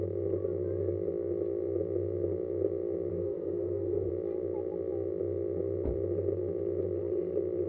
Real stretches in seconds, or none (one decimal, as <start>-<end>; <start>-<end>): 0.0-3.1; 4.1-7.7